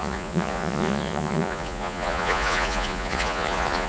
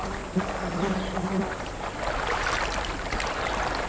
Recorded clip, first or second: second